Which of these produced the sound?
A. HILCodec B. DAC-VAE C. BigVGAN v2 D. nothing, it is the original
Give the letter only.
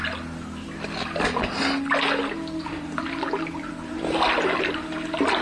D